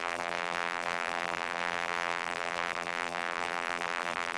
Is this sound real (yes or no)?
no